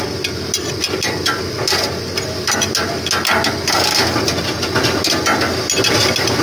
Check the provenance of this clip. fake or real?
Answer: real